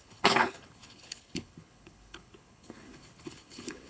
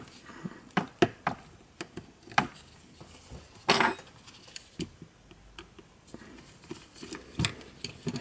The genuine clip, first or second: second